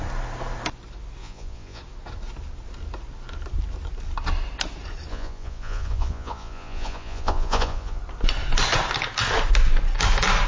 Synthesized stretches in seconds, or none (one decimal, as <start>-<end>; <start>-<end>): 1.2-1.8; 5.1-8.0